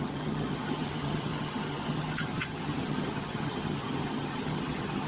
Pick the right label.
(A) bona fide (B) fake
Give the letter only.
B